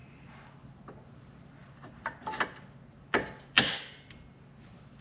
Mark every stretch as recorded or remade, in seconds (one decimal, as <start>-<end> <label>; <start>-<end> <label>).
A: 0.0-5.0 recorded